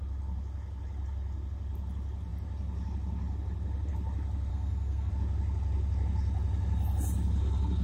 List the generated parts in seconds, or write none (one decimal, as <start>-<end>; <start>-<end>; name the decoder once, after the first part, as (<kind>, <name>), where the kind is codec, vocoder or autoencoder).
4.5-5.1 (codec, SNAC)